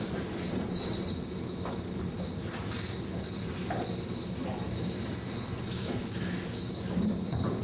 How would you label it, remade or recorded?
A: recorded